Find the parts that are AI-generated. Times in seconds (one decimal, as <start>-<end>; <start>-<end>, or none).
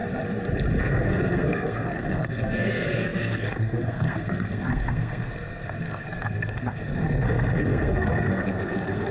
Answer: 0.8-9.1